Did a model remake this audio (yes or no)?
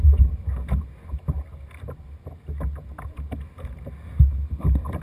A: no